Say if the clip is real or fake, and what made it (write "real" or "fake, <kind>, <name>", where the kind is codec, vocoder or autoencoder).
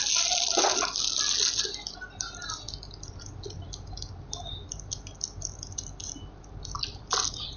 real